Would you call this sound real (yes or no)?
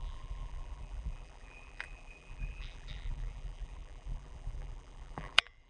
no